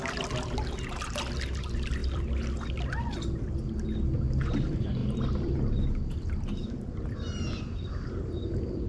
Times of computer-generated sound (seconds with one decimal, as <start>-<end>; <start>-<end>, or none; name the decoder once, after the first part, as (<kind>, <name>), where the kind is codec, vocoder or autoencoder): none